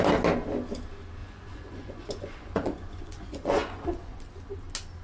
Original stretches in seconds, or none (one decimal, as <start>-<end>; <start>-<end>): 0.0-1.2; 4.2-5.0